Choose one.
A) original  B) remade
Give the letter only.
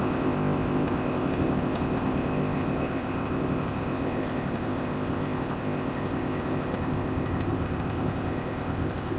B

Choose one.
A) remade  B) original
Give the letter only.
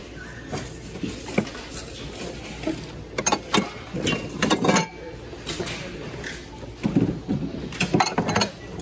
B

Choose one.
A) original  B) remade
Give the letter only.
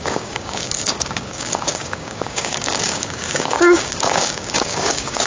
B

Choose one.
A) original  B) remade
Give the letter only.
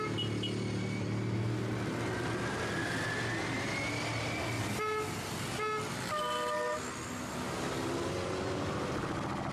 A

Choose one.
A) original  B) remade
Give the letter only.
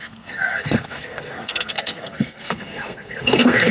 B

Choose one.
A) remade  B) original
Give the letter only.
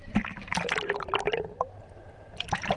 A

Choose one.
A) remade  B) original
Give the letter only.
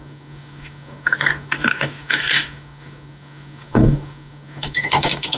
A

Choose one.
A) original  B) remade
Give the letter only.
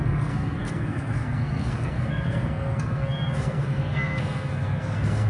B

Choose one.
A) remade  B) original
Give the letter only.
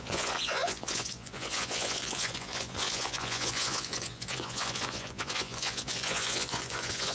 A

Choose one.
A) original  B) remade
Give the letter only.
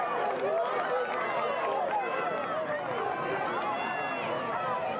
A